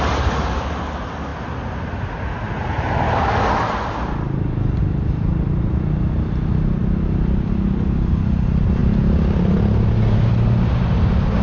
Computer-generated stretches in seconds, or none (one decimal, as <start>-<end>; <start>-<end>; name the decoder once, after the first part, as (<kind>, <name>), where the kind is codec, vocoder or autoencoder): none